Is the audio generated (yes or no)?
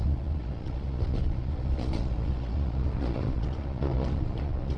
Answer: yes